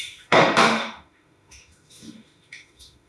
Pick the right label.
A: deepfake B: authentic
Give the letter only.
A